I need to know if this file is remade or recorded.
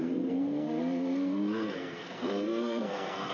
remade